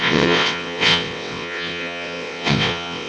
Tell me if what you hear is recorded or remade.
remade